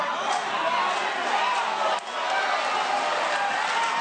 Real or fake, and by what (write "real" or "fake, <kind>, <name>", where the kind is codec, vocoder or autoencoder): real